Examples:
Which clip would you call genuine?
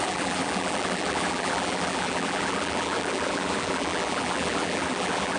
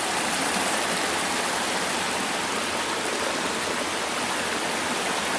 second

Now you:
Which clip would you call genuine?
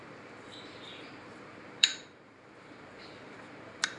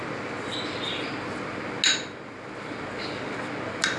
second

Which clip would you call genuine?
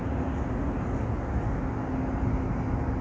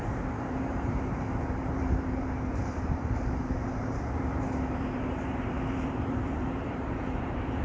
first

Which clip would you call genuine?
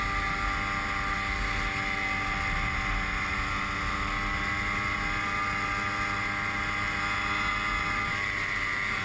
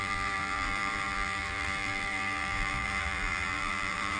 first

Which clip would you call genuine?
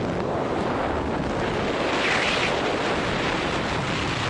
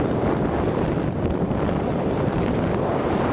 first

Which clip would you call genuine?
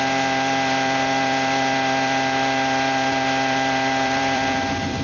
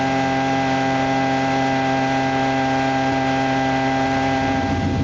second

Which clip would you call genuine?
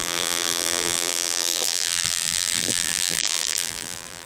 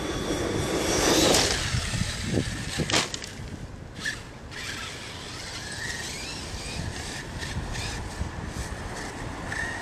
second